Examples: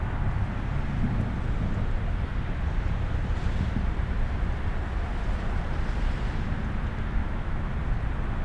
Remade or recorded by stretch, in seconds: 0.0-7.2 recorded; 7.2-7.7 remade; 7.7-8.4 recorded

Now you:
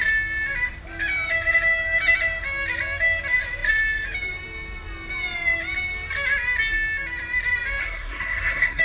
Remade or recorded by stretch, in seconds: 0.0-7.8 recorded; 7.8-8.8 remade

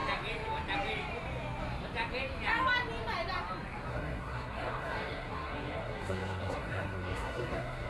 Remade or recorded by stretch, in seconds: 0.0-3.9 recorded; 3.9-7.9 remade